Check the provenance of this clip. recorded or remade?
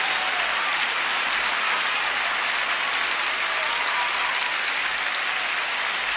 recorded